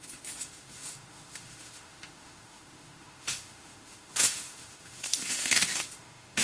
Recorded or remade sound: remade